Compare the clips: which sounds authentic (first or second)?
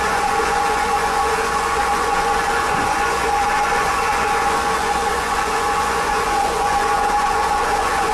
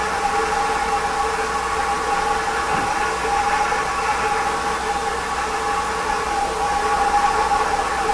second